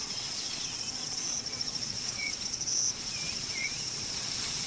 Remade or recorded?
remade